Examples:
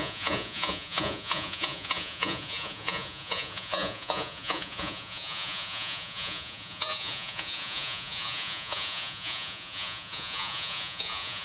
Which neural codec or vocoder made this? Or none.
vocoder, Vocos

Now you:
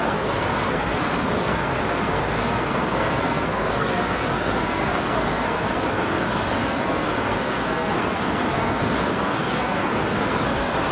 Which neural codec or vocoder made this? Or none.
codec, SNAC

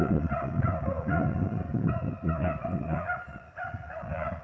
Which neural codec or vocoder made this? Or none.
vocoder, Vocos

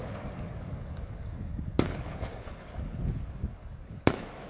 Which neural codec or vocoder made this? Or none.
codec, DAC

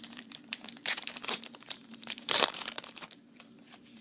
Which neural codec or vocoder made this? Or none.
vocoder, BigVGAN v2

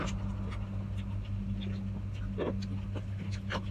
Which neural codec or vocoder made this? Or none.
none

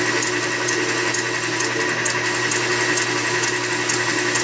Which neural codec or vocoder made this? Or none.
none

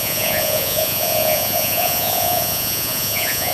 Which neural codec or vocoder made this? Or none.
vocoder, Vocos